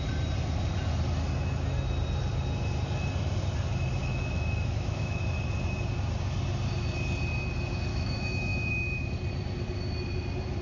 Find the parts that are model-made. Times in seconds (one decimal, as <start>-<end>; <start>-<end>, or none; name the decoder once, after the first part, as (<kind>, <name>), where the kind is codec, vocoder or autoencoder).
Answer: 4.0-5.2 (autoencoder, DAC-VAE); 7.9-8.7